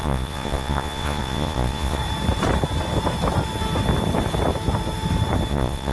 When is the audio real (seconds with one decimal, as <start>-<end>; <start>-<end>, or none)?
2.0-5.5